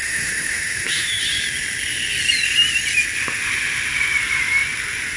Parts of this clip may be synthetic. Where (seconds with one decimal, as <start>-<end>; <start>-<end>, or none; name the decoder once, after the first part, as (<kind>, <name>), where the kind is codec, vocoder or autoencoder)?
0.0-1.2 (autoencoder, DAC-VAE)

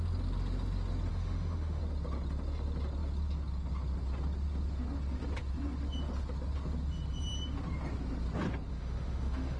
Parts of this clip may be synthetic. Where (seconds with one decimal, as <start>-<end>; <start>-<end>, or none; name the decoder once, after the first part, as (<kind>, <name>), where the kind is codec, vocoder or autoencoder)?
1.1-1.8 (autoencoder, DAC-VAE); 8.7-9.6

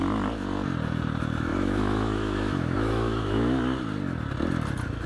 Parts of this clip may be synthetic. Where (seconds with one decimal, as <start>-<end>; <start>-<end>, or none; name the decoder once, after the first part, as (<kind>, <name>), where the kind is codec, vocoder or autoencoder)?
1.5-3.6 (autoencoder, DAC-VAE)

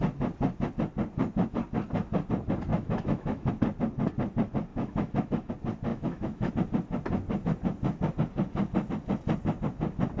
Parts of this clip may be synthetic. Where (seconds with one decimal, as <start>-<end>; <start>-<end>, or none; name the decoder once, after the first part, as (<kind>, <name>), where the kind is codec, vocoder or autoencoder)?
2.7-3.5 (autoencoder, DAC-VAE); 4.7-5.5; 5.9-6.5

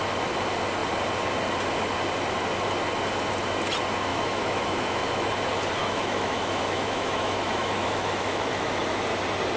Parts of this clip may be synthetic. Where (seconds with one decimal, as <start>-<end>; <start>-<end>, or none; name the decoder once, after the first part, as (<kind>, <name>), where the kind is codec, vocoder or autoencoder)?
4.1-5.3 (autoencoder, DAC-VAE); 5.8-8.8

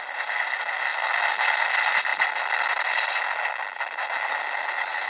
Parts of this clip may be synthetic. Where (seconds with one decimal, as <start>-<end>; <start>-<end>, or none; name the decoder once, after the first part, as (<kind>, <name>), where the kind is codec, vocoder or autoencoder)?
none

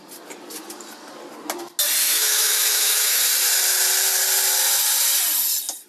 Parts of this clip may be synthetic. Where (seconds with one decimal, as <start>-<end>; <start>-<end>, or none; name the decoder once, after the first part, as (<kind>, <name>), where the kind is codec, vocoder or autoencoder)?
2.0-3.2 (autoencoder, DAC-VAE)

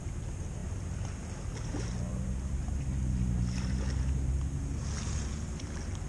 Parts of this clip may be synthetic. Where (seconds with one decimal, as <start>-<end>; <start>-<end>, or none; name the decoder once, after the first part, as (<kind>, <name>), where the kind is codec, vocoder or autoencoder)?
none